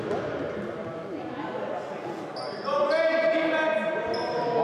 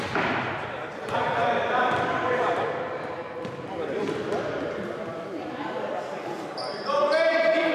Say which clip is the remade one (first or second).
second